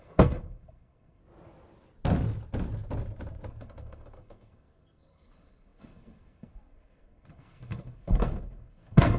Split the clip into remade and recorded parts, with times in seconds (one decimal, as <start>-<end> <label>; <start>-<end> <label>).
0.0-1.2 remade; 1.2-3.5 recorded; 3.5-9.2 remade